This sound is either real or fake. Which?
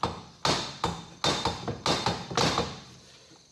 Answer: real